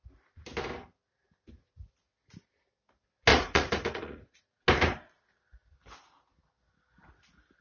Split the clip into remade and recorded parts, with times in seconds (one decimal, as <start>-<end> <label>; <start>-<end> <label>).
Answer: 0.0-3.3 recorded; 3.3-4.4 remade; 4.4-7.6 recorded